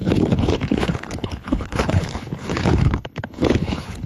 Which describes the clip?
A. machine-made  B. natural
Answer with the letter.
A